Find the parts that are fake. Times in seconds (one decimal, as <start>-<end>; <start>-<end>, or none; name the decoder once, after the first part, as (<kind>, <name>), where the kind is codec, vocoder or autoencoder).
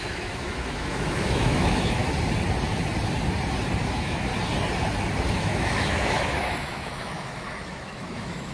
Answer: 0.0-2.0 (autoencoder, DAC-VAE); 3.8-4.3; 5.3-8.5